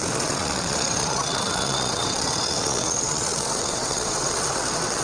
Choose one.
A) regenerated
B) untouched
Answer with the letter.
A